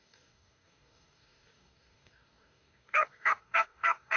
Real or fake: fake